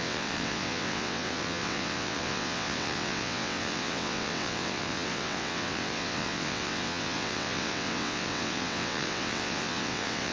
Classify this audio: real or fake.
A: fake